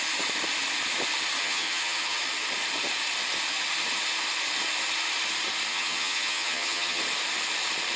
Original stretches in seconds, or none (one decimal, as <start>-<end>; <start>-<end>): 0.0-1.4; 2.2-5.7; 7.0-8.0